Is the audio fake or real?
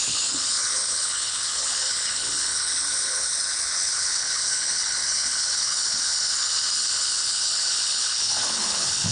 fake